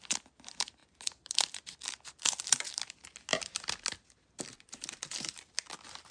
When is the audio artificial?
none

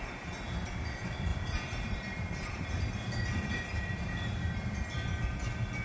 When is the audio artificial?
1.3-4.8